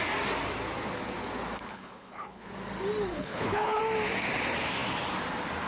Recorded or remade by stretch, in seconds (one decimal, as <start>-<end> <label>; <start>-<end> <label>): 0.0-1.7 recorded; 1.7-2.5 remade; 2.5-3.1 recorded; 3.1-3.8 remade; 3.8-5.7 recorded